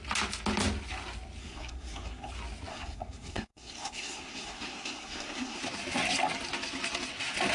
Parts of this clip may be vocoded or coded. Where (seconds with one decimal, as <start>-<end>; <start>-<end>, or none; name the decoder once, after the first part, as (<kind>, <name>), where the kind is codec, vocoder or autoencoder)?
1.4-2.3 (codec, SNAC); 2.7-5.6